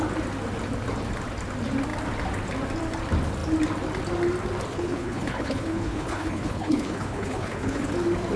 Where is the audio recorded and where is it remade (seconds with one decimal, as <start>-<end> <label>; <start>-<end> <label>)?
0.0-4.7 recorded; 4.7-7.9 remade; 7.9-8.4 recorded